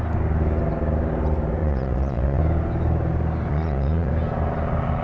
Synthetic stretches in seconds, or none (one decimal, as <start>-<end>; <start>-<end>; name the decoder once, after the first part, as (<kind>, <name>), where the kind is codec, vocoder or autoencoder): 1.6-2.4 (vocoder, Vocos); 3.5-4.1